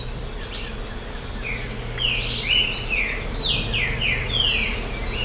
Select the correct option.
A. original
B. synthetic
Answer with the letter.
A